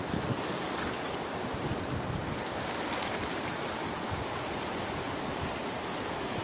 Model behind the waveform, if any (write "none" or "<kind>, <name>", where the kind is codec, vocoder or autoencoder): none